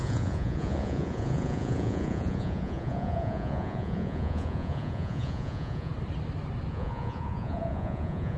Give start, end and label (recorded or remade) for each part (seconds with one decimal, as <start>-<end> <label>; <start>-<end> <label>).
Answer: 0.0-5.9 remade; 5.9-6.7 recorded; 6.7-8.4 remade